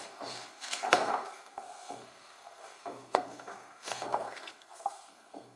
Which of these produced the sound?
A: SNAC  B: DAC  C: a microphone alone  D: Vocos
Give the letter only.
A